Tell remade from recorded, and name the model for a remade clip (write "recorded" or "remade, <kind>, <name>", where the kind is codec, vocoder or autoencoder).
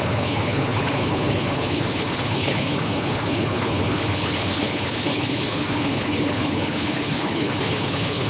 remade, codec, HILCodec